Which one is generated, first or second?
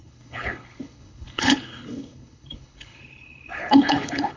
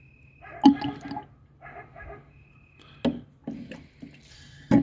first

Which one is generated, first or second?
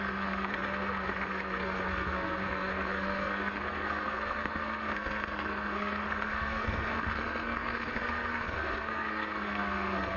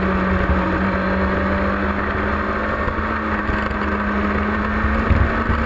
first